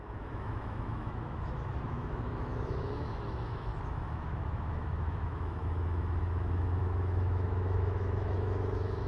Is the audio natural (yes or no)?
no